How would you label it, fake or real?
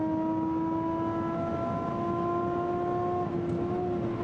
real